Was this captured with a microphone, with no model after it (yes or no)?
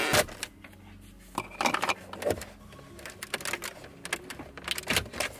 yes